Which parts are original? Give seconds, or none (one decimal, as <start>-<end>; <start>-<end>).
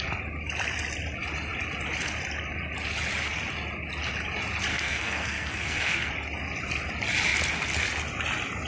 0.0-4.7; 6.1-8.7